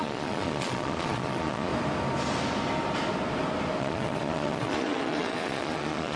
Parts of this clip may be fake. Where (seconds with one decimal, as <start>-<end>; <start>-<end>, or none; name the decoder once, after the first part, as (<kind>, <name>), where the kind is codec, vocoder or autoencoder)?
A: 0.0-1.7 (vocoder, Vocos); 3.8-6.2